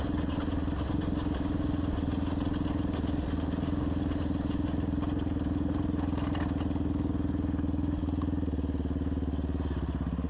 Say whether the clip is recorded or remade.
recorded